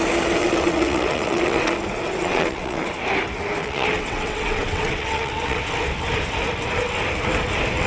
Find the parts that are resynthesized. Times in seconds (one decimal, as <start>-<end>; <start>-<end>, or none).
0.4-1.7; 2.2-2.9; 3.6-5.6